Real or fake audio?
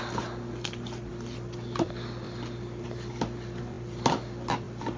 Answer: real